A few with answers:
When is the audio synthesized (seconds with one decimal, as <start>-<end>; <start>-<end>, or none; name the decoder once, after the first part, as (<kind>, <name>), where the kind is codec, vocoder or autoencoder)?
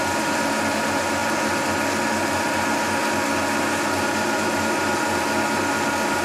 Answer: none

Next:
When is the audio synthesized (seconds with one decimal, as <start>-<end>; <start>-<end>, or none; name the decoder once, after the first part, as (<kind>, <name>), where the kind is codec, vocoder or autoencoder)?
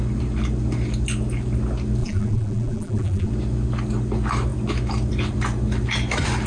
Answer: 2.0-3.3 (vocoder, BigVGAN v2)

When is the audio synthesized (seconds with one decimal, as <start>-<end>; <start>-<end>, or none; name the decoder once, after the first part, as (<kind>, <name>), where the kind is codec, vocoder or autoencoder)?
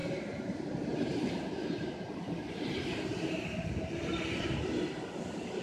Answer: 0.0-3.4 (vocoder, BigVGAN v2)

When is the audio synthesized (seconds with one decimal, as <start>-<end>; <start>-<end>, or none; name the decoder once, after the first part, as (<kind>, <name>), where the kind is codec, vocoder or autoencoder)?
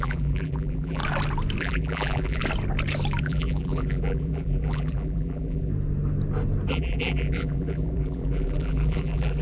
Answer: 0.0-1.0 (vocoder, BigVGAN v2); 1.6-2.4; 3.2-5.7; 6.7-9.4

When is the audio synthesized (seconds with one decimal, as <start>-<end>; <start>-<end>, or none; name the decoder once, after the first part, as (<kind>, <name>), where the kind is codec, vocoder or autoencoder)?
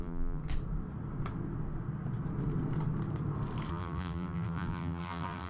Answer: 0.0-0.4 (vocoder, BigVGAN v2); 3.7-5.5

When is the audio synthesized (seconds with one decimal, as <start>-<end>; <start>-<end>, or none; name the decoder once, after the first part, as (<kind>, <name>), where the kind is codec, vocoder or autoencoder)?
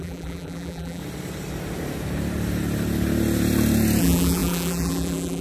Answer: 0.0-1.0 (vocoder, BigVGAN v2); 4.0-5.4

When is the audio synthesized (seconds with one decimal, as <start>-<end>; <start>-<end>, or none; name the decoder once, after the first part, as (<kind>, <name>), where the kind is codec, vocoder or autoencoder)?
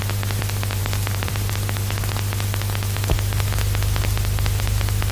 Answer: 0.8-1.5 (vocoder, BigVGAN v2)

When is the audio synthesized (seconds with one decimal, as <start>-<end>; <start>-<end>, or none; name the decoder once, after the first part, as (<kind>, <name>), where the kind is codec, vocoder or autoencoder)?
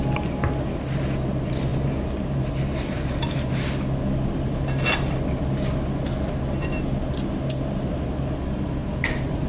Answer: 1.7-3.5 (vocoder, BigVGAN v2); 8.8-9.5